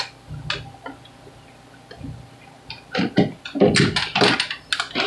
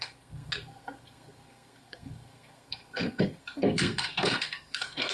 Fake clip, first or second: second